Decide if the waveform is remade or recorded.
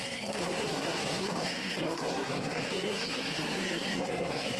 remade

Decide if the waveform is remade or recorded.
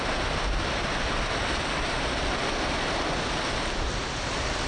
recorded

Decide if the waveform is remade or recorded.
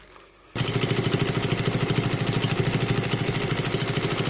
recorded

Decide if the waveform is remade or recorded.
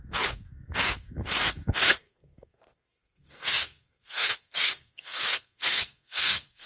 remade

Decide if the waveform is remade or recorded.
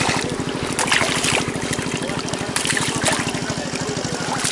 recorded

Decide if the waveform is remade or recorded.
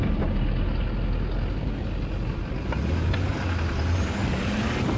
recorded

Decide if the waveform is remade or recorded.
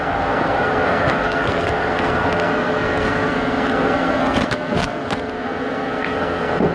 remade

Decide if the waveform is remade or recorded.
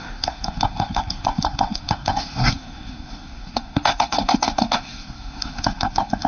remade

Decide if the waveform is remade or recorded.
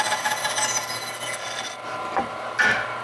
recorded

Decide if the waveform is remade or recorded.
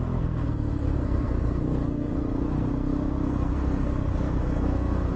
remade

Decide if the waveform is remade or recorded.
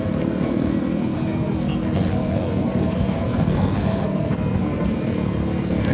remade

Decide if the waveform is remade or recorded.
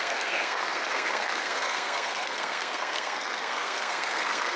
remade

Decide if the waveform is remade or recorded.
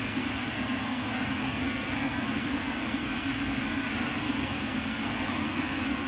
remade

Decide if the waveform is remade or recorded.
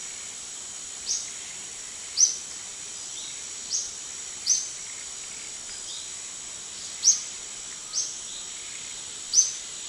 recorded